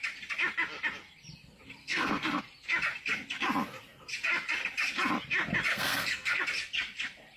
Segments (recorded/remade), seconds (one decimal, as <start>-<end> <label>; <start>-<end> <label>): 0.0-1.8 recorded; 1.8-2.4 remade; 2.4-5.7 recorded; 5.7-6.4 remade; 6.4-7.4 recorded